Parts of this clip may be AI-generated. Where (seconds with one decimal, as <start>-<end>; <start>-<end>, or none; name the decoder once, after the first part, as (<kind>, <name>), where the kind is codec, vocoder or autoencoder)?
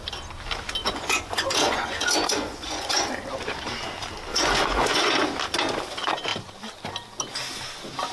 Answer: 0.8-3.1 (vocoder, Vocos); 4.3-5.1